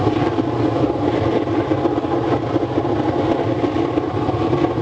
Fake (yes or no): no